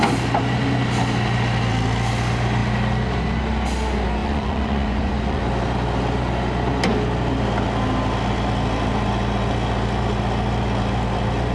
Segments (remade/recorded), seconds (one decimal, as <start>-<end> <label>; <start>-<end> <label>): 0.0-4.2 recorded; 4.2-5.4 remade; 5.4-11.5 recorded